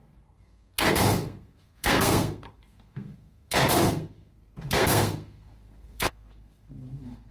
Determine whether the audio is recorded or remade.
remade